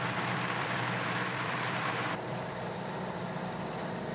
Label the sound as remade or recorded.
remade